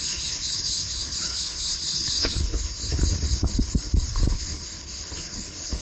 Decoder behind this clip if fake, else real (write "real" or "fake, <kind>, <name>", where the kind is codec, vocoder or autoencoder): fake, codec, HILCodec